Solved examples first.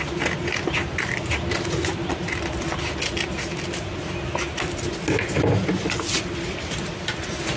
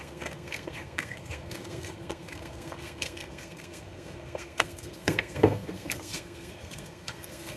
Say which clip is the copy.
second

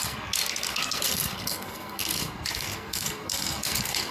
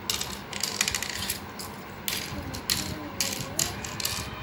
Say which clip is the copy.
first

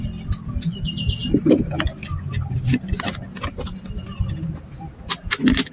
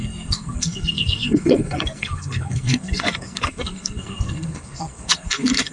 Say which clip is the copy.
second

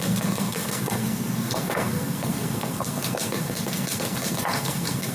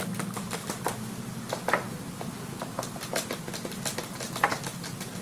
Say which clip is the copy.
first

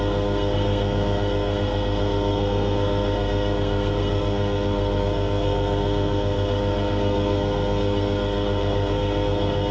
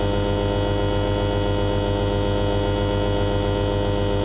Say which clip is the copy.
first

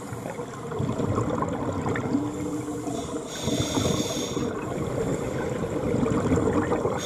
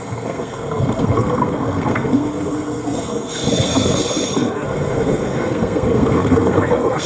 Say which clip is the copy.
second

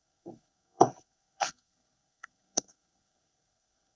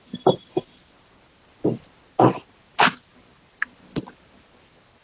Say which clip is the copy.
first